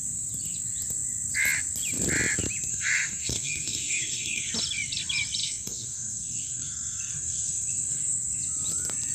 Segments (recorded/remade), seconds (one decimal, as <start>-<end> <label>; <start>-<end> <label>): 0.0-2.7 recorded; 2.7-4.5 remade; 4.5-5.4 recorded; 5.4-8.4 remade; 8.4-9.1 recorded